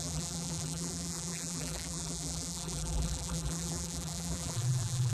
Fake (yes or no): yes